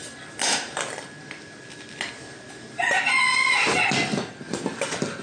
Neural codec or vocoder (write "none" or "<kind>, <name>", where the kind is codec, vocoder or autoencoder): none